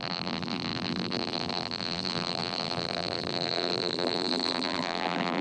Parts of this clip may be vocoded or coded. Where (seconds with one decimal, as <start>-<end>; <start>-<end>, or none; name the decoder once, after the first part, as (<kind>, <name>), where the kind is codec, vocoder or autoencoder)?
0.0-5.4 (vocoder, BigVGAN v2)